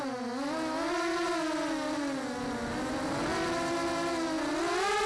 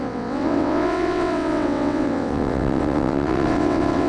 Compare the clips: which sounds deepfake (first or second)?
second